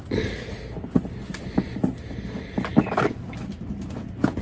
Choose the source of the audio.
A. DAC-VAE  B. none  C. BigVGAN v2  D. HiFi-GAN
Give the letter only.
B